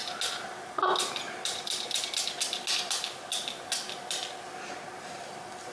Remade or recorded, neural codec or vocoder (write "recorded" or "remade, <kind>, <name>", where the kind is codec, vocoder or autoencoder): recorded